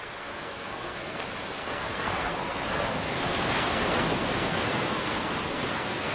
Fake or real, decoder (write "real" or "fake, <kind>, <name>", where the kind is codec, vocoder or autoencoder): fake, codec, SNAC